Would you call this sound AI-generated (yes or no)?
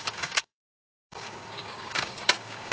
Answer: yes